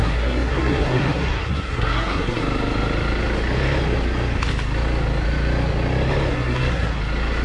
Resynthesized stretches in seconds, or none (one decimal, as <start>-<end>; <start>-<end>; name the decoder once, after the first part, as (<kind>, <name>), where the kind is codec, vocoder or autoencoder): 0.0-2.4 (codec, SNAC); 6.3-7.0